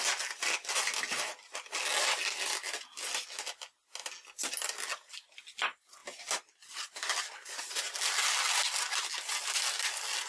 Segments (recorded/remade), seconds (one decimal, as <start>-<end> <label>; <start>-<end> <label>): 0.0-10.3 recorded